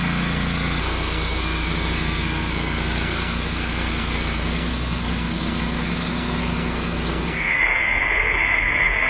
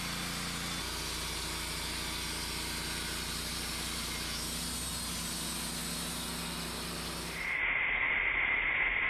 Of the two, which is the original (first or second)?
second